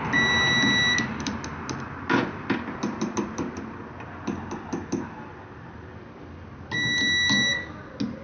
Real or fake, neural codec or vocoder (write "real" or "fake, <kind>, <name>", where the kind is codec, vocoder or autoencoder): real